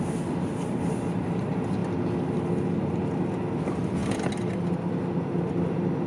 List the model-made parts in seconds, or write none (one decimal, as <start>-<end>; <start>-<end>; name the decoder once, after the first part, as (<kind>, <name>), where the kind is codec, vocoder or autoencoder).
none

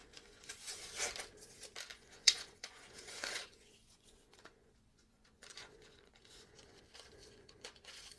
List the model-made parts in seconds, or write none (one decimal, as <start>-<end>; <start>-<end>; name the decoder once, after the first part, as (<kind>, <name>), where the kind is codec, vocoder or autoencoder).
0.0-1.1 (vocoder, Vocos); 1.9-6.8; 7.2-8.2

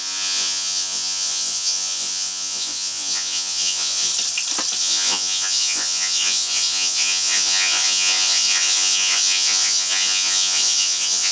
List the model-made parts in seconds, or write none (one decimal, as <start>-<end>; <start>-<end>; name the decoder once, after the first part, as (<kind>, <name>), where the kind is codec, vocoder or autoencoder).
0.0-4.1 (vocoder, Vocos); 4.8-11.3